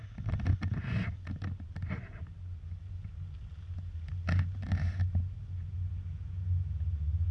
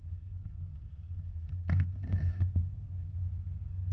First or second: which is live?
first